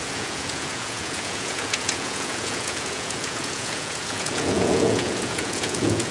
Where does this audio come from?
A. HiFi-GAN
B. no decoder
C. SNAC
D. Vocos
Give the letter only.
D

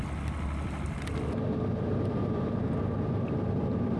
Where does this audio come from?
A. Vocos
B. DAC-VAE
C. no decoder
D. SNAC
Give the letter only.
C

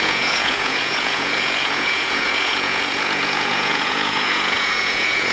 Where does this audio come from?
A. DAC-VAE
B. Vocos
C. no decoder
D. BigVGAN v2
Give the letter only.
B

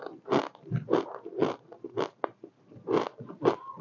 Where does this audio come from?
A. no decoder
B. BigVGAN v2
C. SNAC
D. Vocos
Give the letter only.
A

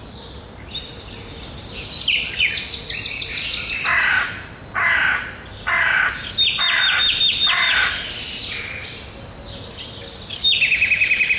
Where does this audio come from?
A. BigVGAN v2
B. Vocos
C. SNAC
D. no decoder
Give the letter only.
D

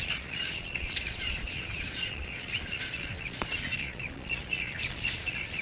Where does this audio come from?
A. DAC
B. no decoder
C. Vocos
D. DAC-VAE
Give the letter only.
C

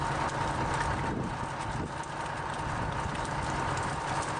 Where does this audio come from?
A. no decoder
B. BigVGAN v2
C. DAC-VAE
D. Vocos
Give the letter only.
A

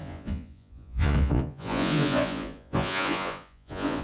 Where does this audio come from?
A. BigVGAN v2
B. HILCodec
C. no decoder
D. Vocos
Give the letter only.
D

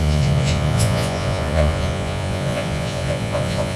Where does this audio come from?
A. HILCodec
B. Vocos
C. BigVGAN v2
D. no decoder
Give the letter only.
B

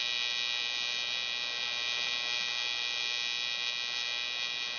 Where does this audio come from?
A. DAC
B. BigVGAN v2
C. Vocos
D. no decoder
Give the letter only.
D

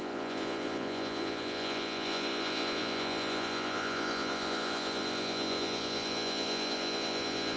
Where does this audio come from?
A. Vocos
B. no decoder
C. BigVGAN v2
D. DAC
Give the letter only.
A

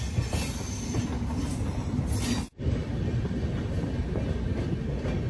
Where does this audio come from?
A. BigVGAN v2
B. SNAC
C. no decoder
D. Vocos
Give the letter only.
C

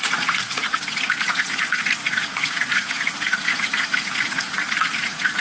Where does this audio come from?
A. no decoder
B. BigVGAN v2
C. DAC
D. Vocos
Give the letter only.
D